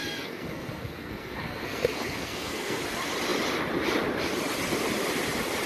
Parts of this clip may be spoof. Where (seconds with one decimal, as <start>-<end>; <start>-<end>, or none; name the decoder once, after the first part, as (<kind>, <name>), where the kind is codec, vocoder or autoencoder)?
0.0-2.8 (codec, SNAC)